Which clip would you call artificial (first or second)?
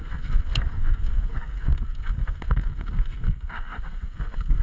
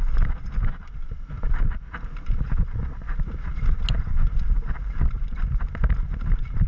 first